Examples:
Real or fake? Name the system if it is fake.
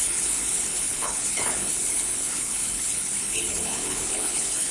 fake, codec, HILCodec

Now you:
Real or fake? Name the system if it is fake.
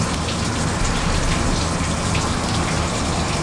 real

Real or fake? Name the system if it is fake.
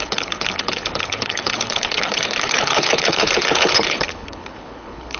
fake, codec, HILCodec